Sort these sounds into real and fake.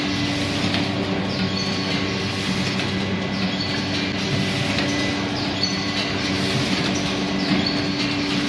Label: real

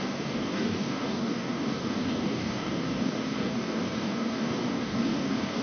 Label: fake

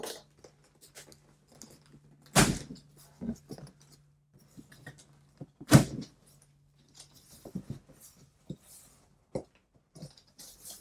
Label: real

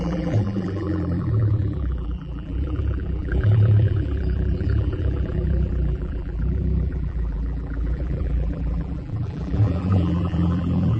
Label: fake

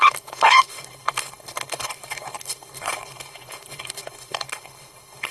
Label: fake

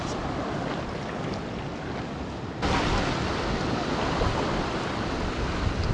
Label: real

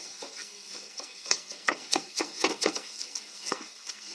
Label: fake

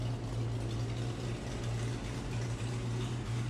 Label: real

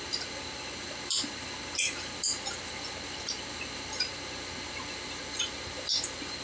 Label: real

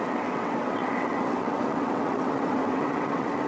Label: fake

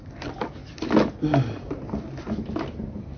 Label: real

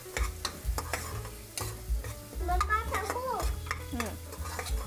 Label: real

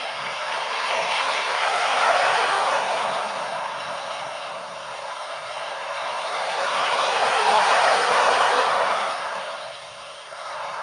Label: fake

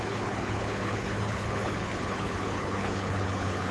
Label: fake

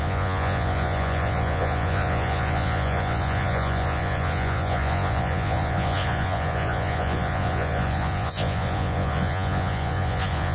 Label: fake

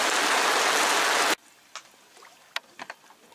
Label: real